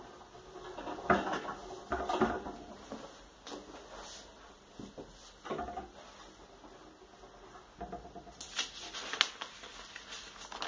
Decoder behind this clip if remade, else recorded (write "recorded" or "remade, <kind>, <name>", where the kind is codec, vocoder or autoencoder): recorded